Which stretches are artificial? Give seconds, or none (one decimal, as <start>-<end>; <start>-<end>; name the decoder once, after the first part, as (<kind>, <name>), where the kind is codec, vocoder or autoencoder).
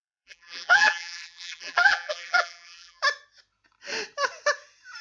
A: 0.0-3.0 (vocoder, BigVGAN v2)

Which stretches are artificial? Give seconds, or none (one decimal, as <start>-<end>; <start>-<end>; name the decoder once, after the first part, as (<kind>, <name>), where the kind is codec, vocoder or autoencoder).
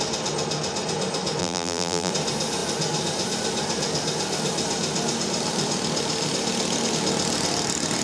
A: 1.4-2.1 (vocoder, BigVGAN v2)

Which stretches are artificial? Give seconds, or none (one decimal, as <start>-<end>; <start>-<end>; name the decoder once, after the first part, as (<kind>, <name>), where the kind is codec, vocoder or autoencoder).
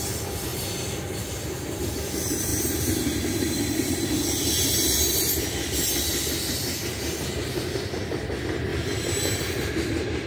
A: 2.5-3.9 (vocoder, BigVGAN v2); 8.7-9.4